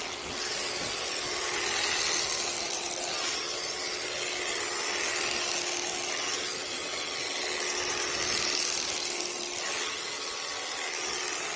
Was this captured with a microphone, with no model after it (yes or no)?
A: yes